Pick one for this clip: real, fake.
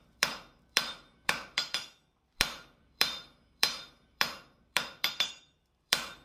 fake